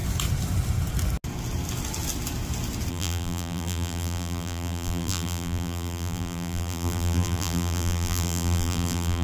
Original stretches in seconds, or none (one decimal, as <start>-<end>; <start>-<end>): 0.0-2.9